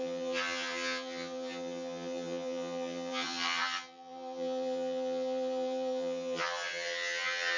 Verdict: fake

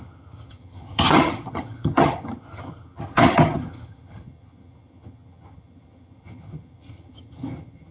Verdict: fake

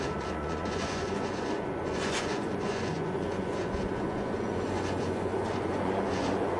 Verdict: fake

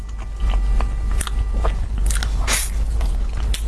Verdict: real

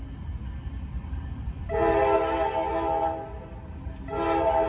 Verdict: real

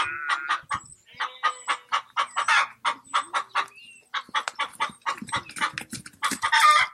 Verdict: real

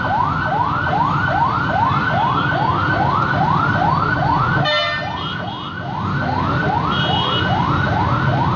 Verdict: real